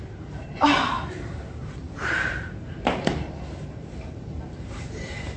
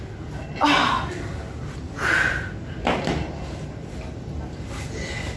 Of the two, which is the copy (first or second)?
first